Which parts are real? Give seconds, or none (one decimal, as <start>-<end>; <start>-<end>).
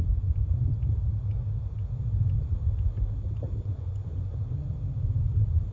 0.7-3.6; 4.7-5.7